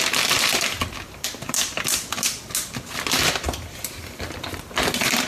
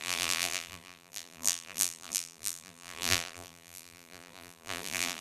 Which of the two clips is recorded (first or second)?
first